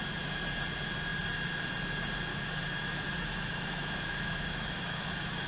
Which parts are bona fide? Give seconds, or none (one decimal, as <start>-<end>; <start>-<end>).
0.0-2.3